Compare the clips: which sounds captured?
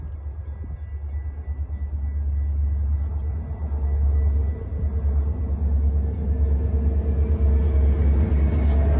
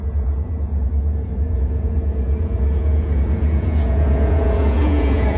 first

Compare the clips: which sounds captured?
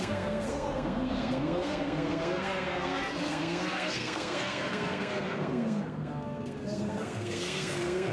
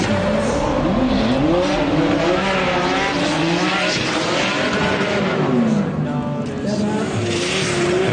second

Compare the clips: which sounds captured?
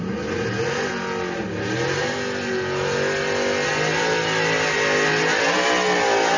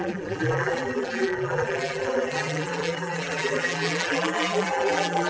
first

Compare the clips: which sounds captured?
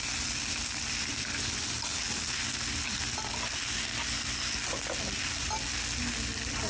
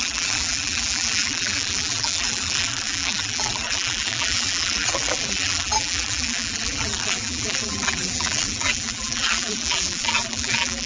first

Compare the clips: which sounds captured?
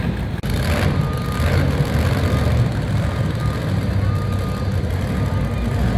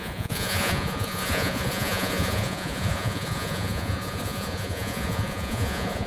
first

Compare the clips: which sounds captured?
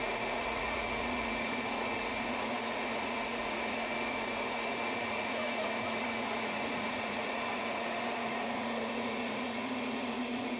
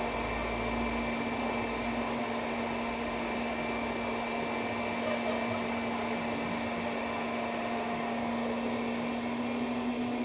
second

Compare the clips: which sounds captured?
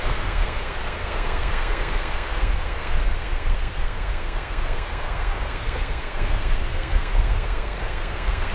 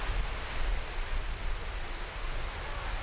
second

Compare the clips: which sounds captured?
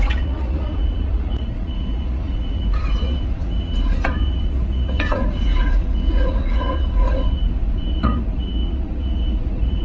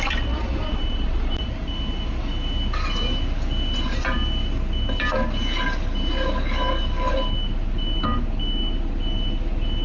second